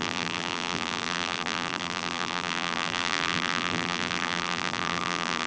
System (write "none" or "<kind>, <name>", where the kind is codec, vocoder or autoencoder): vocoder, BigVGAN v2